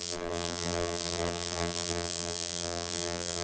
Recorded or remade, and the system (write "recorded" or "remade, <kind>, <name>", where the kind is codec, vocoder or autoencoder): remade, vocoder, BigVGAN v2